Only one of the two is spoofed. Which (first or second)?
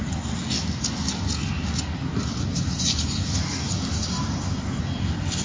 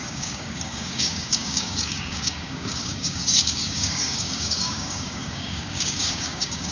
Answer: second